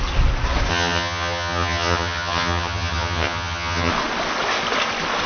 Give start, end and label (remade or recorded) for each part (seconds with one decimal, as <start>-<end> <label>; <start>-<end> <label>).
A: 0.0-0.7 recorded; 0.7-3.9 remade; 3.9-5.3 recorded